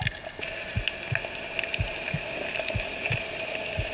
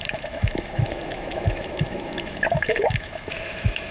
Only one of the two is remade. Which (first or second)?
second